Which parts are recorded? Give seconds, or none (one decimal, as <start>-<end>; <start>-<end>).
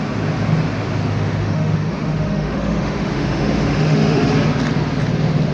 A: 0.0-1.0; 4.3-5.5